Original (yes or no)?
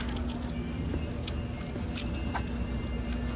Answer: yes